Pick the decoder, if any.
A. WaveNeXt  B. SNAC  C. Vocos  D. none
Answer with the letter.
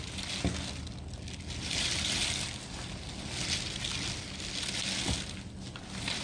D